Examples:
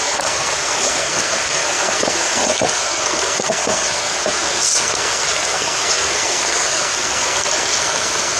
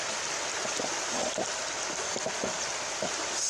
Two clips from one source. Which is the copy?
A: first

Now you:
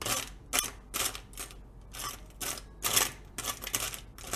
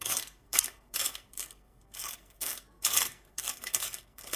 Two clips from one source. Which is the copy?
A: second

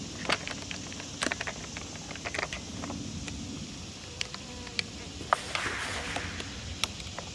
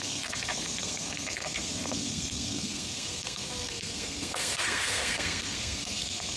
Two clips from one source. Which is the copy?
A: second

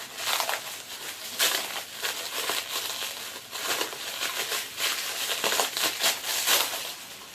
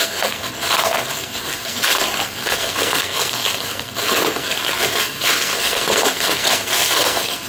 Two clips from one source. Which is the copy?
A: second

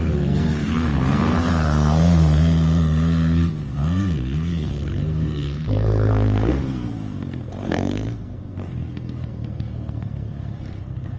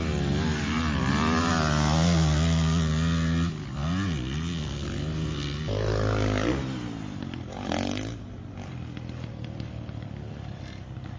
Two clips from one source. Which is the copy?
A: first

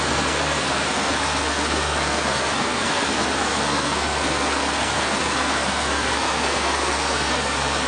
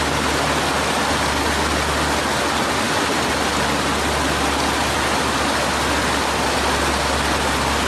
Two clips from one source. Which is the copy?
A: first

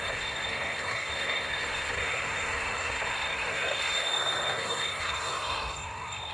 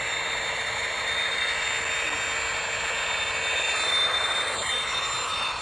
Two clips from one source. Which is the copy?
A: first